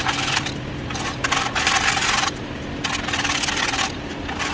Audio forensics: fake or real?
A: real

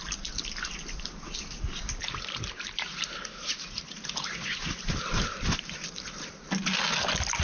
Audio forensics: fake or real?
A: real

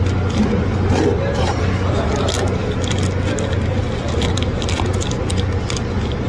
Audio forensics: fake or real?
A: real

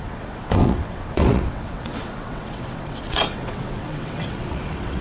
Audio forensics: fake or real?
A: fake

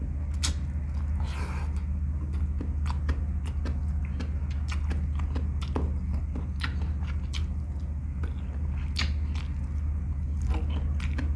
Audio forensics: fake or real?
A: real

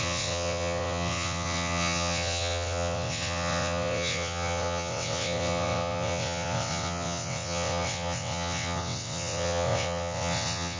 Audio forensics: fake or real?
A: fake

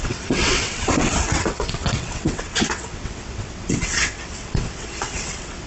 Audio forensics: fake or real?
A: fake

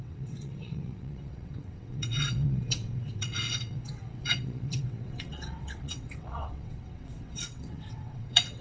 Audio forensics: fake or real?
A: fake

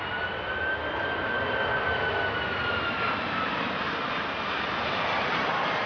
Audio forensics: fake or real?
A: real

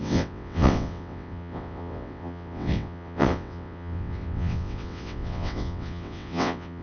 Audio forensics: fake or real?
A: fake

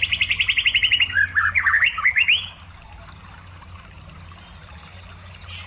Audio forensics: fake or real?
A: real